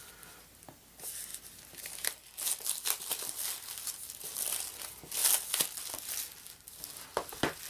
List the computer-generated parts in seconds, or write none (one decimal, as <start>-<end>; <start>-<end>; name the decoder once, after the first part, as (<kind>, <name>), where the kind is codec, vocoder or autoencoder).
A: none